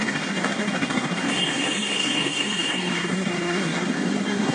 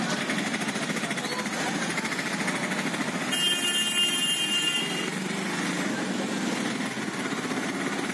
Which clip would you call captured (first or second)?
second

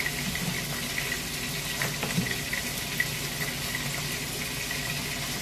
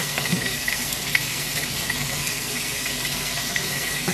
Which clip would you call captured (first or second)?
first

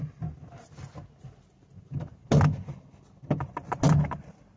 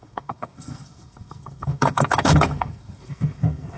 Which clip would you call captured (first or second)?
first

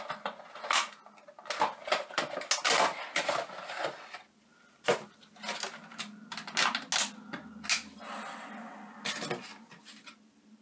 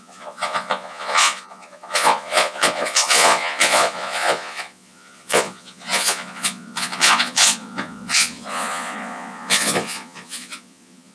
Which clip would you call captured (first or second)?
first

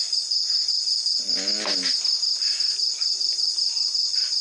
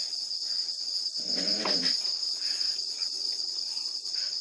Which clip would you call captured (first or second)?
first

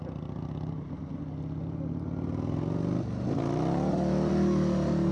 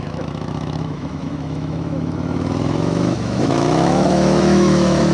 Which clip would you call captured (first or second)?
first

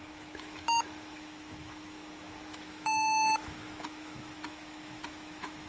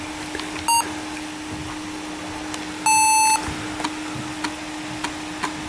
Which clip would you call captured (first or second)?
second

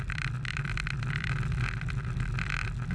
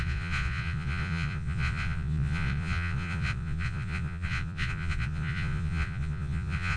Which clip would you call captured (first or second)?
first